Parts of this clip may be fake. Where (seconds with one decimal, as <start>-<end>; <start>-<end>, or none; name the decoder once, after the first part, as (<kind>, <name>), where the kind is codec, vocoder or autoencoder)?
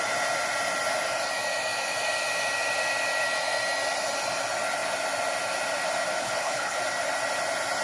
6.2-6.8 (codec, HILCodec)